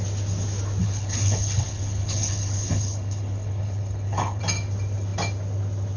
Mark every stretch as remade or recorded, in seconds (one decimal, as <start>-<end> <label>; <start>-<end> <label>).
0.0-0.8 recorded; 0.8-4.4 remade; 4.4-6.0 recorded